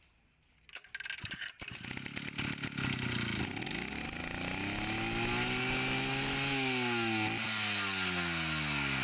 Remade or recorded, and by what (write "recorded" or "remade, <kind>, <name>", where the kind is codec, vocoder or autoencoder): recorded